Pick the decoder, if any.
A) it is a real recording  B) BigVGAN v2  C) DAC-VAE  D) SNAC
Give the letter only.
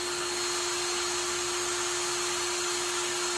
A